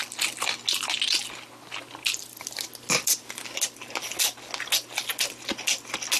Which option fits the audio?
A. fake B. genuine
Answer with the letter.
B